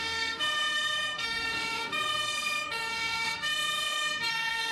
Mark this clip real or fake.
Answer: fake